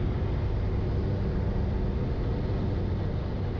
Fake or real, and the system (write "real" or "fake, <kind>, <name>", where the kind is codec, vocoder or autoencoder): real